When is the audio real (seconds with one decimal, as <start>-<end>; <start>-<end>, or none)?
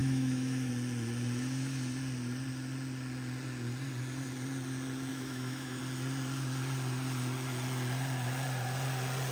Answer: 0.7-5.1; 5.8-9.3